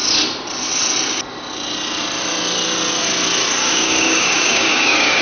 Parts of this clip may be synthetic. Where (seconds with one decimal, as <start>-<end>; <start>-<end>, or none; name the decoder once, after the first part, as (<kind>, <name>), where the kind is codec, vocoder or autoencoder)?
3.6-5.2 (codec, DAC)